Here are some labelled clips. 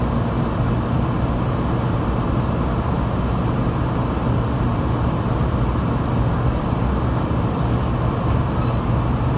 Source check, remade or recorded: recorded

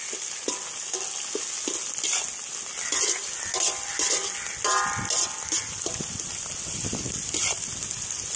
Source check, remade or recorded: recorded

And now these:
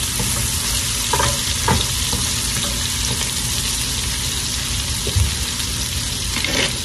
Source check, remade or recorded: recorded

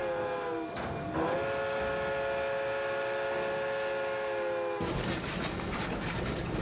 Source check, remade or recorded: recorded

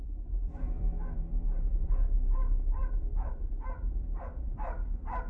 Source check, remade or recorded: remade